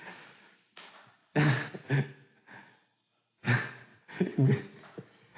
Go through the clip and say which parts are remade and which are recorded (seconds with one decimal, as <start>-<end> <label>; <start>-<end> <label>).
0.0-3.9 recorded; 3.9-4.5 remade; 4.5-5.4 recorded